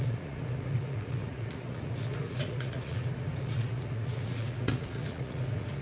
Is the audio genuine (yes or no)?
no